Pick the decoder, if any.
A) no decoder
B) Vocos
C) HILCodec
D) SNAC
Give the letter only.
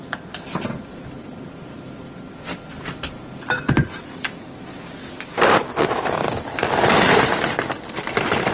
A